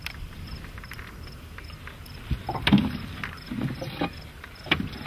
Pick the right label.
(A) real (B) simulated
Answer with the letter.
A